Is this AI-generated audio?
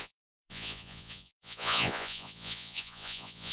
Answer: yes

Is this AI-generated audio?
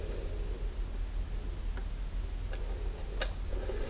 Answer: no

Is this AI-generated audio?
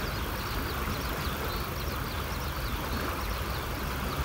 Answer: no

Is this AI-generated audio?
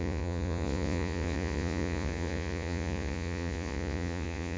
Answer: yes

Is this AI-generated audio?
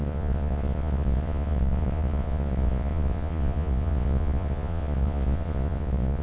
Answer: yes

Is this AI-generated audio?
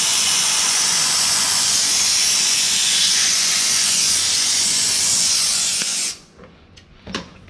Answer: yes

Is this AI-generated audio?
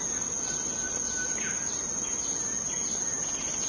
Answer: no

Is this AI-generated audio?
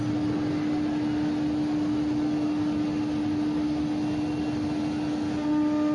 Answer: no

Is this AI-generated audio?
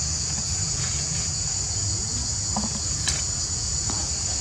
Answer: yes